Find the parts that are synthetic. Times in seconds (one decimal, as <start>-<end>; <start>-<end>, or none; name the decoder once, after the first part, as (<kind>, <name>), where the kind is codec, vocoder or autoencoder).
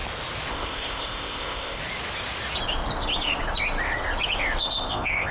0.5-1.8 (codec, ZipCodec); 4.6-5.3